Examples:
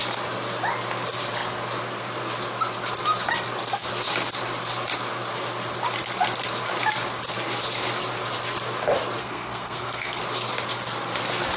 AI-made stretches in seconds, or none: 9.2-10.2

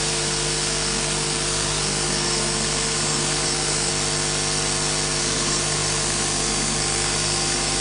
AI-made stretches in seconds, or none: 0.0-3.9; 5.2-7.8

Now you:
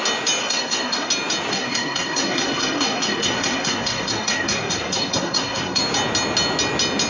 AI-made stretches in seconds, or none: 0.4-1.1; 1.5-5.8